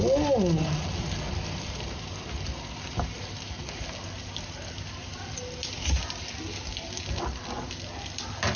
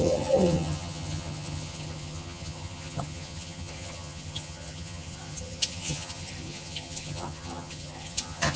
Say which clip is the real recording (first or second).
first